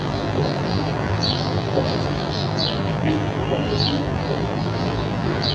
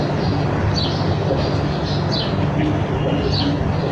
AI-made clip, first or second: first